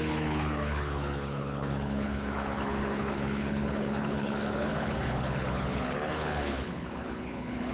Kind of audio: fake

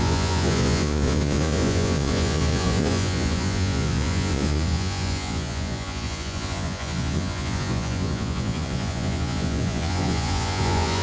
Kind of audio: fake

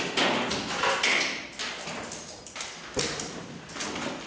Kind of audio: real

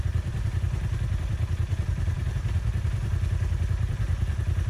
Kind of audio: fake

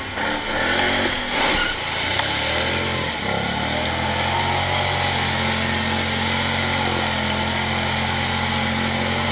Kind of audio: real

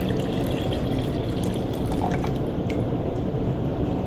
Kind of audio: real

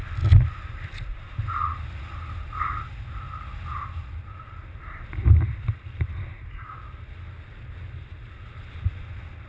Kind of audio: real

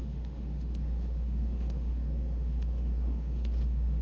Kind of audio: fake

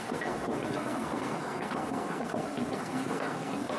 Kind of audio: fake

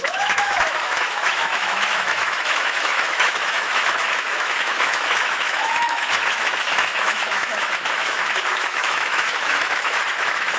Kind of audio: fake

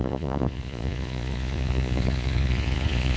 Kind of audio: fake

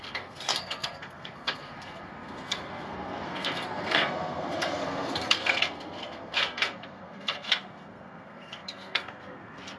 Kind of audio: fake